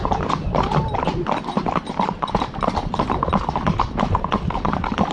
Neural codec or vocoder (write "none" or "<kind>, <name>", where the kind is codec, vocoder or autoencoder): vocoder, BigVGAN v2